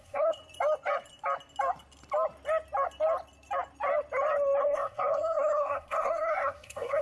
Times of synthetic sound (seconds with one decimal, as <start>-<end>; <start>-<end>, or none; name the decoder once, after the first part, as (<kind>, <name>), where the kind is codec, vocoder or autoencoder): 0.0-0.4 (codec, SNAC); 4.6-7.0